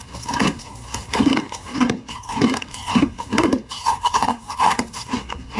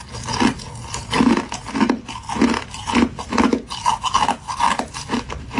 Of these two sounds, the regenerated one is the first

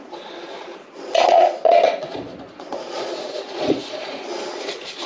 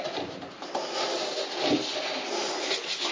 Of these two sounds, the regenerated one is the first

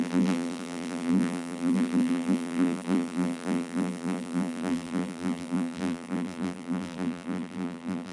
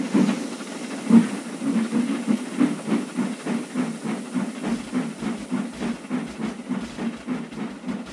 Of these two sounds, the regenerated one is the first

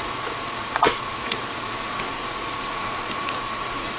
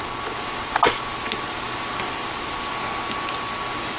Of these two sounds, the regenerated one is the first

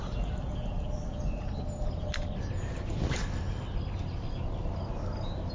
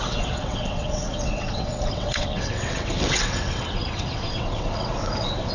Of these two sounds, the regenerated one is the second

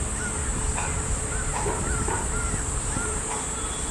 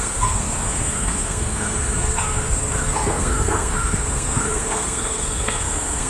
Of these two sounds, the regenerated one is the second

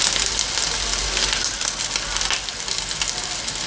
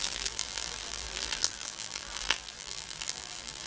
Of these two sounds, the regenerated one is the second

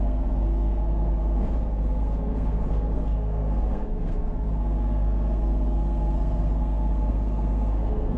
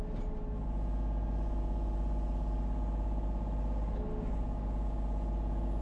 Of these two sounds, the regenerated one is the first